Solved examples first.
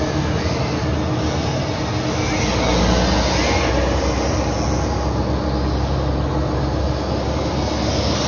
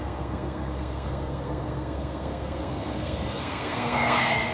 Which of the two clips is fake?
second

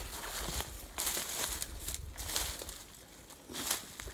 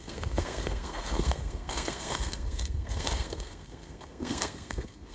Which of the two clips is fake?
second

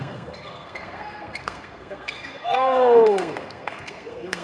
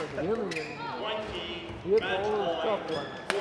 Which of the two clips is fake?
first